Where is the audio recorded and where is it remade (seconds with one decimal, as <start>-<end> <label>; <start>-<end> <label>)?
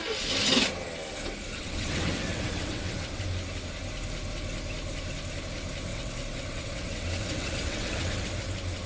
0.0-1.5 recorded; 1.5-3.2 remade; 3.2-5.9 recorded; 5.9-8.1 remade; 8.1-8.9 recorded